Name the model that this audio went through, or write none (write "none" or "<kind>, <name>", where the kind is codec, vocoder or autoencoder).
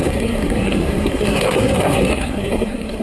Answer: codec, SNAC